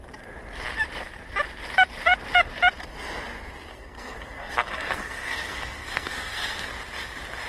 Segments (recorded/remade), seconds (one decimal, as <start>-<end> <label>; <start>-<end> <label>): 0.0-3.7 recorded; 3.7-6.7 remade; 6.7-7.5 recorded